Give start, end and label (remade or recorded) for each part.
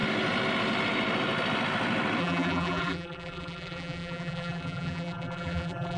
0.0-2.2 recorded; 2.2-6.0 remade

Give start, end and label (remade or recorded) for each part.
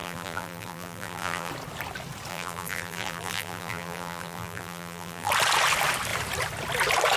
0.0-1.5 remade; 1.5-2.3 recorded; 2.3-5.3 remade; 5.3-7.2 recorded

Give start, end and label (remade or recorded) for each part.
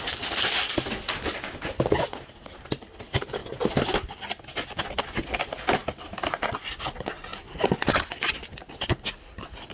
0.0-3.4 recorded; 3.4-4.2 remade; 4.2-9.7 recorded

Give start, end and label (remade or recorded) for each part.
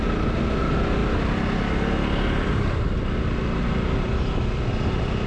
0.0-5.3 recorded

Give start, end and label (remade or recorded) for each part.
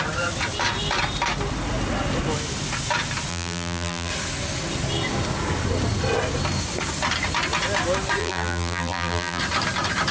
0.0-3.3 recorded; 3.3-4.1 remade; 4.1-8.2 recorded; 8.2-9.4 remade; 9.4-10.1 recorded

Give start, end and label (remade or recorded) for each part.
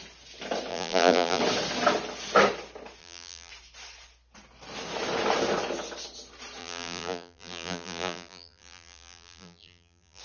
0.0-0.7 recorded; 0.7-1.4 remade; 1.4-3.0 recorded; 3.0-3.5 remade; 3.5-6.6 recorded; 6.6-10.2 remade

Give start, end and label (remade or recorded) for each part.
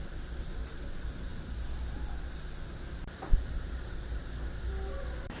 0.0-5.4 recorded